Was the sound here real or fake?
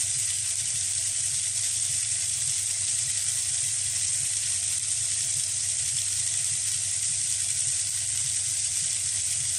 fake